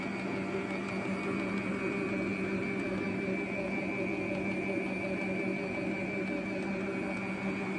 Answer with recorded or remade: recorded